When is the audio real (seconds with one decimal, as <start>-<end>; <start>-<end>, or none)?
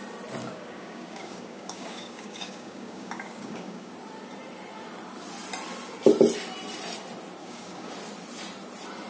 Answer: 0.0-0.4; 3.9-7.4; 7.9-9.1